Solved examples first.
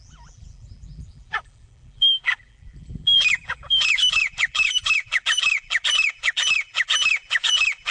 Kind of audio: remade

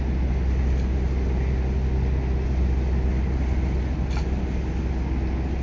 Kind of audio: recorded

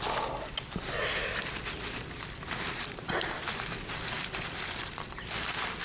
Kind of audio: recorded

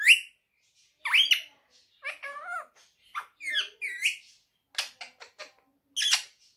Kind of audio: recorded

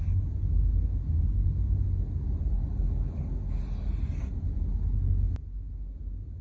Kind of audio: recorded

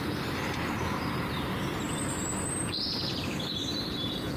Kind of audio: remade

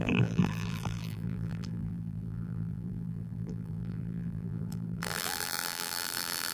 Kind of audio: remade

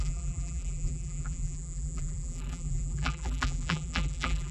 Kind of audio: remade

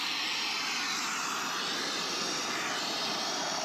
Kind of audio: remade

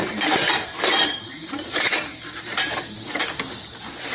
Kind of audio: remade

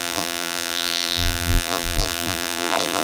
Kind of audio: remade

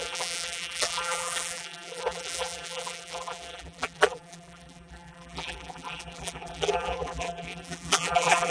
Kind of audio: remade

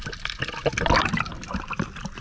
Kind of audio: recorded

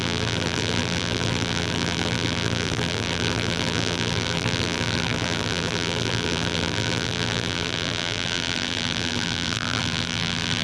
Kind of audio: remade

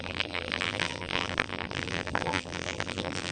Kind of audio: remade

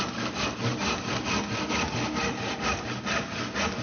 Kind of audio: recorded